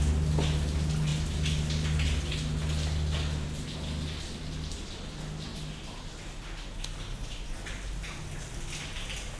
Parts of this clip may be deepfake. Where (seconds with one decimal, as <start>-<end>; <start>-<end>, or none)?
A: none